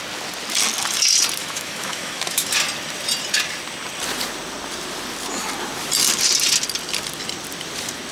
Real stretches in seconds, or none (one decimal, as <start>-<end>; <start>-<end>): 0.0-1.4; 2.5-8.1